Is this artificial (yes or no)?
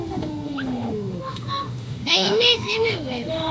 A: yes